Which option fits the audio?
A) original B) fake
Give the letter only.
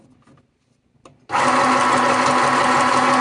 A